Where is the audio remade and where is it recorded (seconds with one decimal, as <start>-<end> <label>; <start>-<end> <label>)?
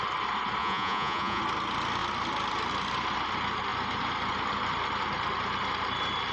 0.0-0.6 recorded; 0.6-1.4 remade; 1.4-6.3 recorded